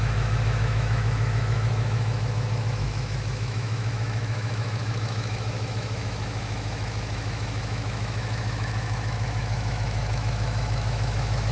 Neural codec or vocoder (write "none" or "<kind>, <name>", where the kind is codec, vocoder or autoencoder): autoencoder, DAC-VAE